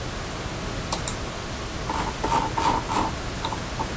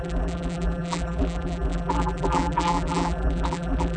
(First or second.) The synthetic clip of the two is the second